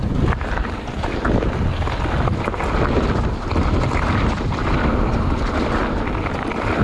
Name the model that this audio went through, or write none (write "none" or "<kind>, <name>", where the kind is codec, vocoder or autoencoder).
none